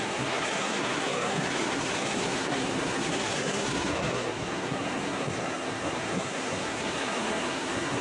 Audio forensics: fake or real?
fake